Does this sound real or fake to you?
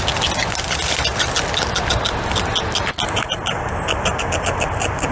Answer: real